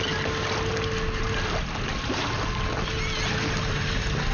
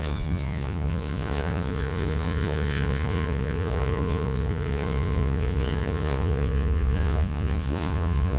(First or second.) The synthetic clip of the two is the second